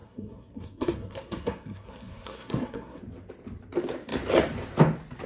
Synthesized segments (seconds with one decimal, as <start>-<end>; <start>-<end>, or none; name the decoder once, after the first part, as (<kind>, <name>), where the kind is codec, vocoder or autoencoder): 0.0-3.0 (codec, SNAC)